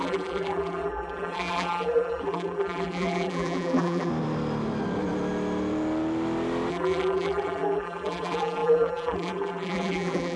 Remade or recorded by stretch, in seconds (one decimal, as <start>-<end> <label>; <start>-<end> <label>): 0.0-4.1 remade; 4.1-6.7 recorded; 6.7-10.4 remade